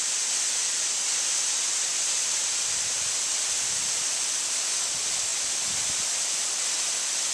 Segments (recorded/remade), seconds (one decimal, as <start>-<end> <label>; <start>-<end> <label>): 0.0-7.3 recorded